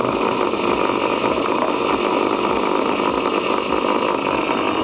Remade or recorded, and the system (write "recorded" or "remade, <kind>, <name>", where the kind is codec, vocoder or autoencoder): recorded